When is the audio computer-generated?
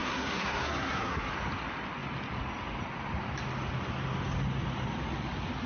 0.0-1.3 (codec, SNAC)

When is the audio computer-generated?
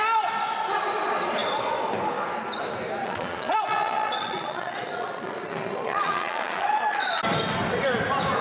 3.0-7.1 (vocoder, Vocos)